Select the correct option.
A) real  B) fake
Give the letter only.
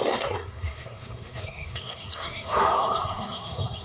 B